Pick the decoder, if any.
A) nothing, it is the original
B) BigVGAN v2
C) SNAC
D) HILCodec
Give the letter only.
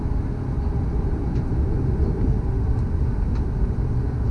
A